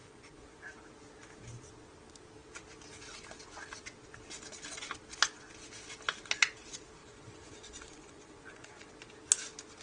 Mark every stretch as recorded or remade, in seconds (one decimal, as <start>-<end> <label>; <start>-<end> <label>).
0.0-0.6 remade; 0.6-7.0 recorded; 7.0-8.9 remade; 8.9-9.8 recorded